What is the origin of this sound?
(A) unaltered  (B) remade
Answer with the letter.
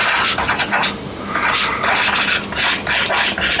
A